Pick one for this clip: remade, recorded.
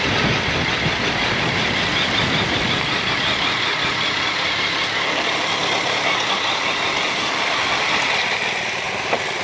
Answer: remade